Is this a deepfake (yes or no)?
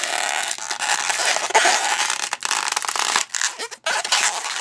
no